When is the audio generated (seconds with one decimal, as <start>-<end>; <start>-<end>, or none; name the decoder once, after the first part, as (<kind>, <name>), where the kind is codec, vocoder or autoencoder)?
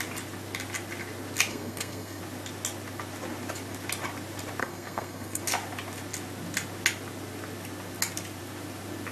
1.5-2.2 (codec, SNAC); 4.6-5.4